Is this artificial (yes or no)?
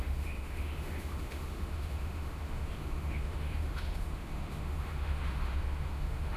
yes